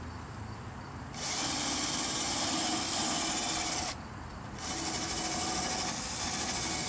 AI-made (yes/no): no